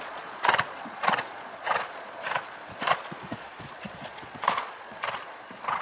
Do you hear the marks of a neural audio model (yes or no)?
yes